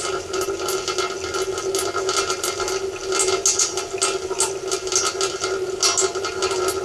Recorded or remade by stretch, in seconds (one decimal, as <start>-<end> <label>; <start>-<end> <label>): 0.0-6.8 recorded